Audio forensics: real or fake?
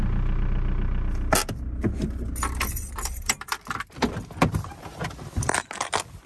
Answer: real